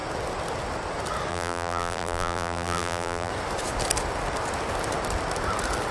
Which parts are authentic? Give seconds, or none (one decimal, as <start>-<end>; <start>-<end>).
0.0-1.3; 3.3-5.9